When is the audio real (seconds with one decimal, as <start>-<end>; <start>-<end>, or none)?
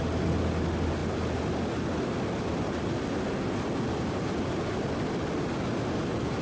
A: 0.0-6.4